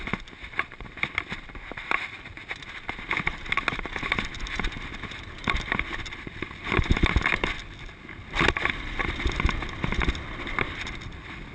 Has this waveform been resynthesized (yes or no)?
no